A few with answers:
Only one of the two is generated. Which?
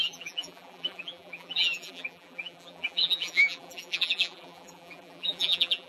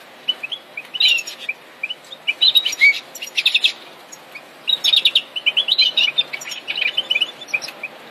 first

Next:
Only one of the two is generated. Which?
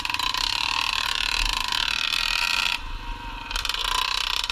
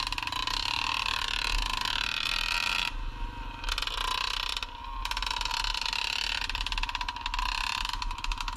first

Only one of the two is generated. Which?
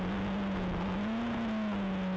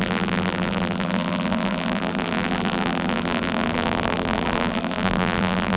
second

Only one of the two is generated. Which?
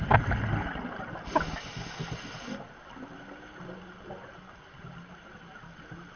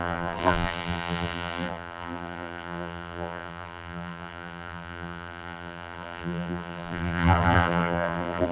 second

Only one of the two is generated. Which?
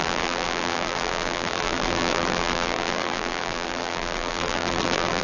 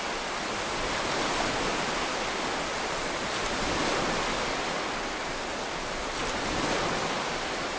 first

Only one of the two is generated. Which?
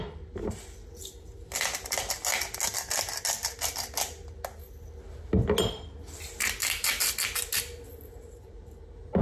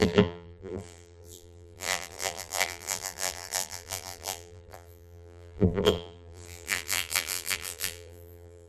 second